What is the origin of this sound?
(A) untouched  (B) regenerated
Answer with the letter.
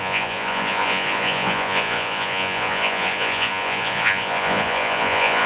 B